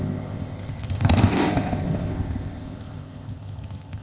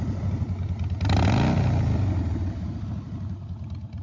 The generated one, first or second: first